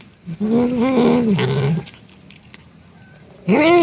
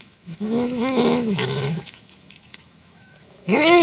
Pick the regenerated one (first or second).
second